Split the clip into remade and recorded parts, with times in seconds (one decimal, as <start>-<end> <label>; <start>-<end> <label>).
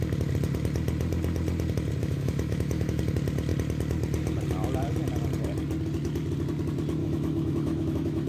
0.0-2.0 recorded; 2.0-3.0 remade; 3.0-7.0 recorded; 7.0-8.3 remade